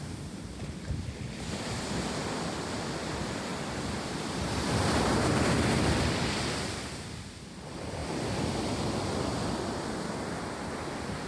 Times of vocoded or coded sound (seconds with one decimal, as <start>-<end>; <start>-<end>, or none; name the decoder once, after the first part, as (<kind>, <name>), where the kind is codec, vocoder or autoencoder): none